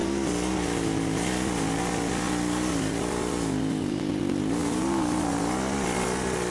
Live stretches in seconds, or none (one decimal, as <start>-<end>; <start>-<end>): 0.0-6.5